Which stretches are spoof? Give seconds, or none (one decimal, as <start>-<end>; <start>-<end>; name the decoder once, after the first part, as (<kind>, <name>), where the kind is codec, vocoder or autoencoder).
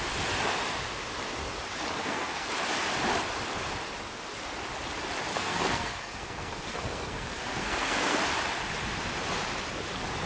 2.0-2.5 (codec, SNAC); 5.3-8.2